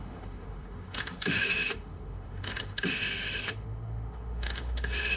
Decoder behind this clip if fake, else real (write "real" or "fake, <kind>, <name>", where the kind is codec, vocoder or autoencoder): fake, autoencoder, DAC-VAE